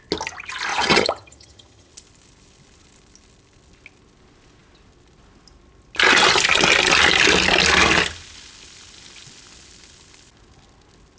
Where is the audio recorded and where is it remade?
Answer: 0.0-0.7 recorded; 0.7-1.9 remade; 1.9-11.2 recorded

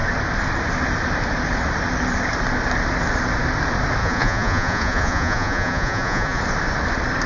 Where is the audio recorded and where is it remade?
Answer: 0.0-4.0 recorded; 4.0-6.4 remade; 6.4-7.3 recorded

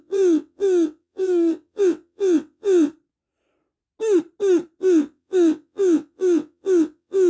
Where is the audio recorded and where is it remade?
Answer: 0.0-2.9 remade; 2.9-4.8 recorded; 4.8-7.3 remade

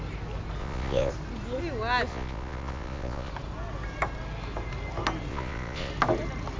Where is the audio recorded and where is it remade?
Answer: 0.0-0.6 recorded; 0.6-1.1 remade; 1.1-2.1 recorded; 2.1-3.3 remade; 3.3-5.3 recorded; 5.3-5.9 remade; 5.9-6.6 recorded